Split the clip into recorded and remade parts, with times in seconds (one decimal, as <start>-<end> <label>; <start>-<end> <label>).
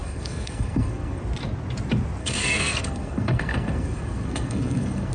0.0-1.2 remade; 1.2-2.2 recorded; 2.2-5.1 remade